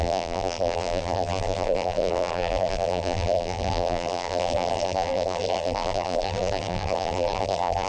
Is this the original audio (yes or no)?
no